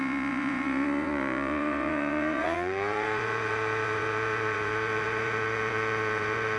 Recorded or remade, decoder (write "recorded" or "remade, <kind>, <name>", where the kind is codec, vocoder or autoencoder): remade, vocoder, Vocos